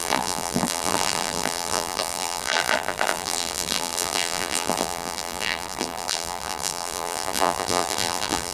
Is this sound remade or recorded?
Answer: remade